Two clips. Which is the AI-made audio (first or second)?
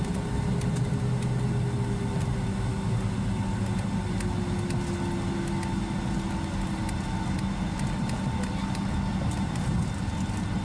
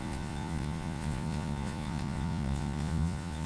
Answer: second